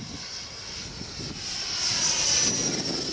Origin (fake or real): real